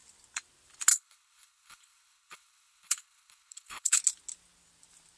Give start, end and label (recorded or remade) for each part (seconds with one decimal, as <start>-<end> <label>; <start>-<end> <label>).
0.0-0.9 recorded; 0.9-4.0 remade; 4.0-5.2 recorded